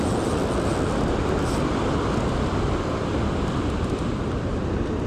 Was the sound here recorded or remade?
recorded